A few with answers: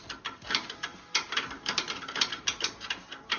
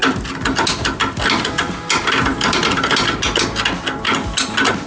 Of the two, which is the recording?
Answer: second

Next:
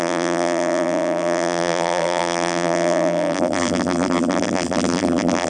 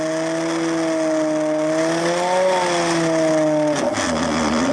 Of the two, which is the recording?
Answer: second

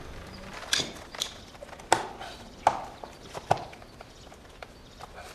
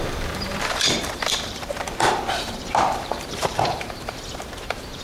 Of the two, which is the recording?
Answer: first